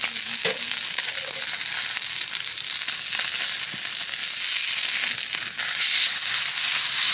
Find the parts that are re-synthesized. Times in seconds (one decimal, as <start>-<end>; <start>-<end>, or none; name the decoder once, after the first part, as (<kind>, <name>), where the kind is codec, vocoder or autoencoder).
none